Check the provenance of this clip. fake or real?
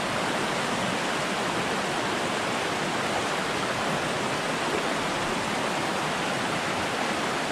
real